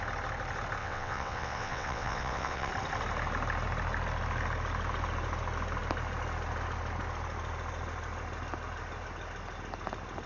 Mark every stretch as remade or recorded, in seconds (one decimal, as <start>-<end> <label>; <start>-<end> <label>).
0.0-0.8 recorded; 0.8-2.7 remade; 2.7-10.3 recorded